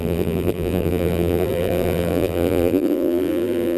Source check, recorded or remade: remade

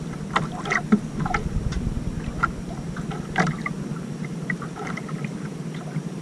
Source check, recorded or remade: recorded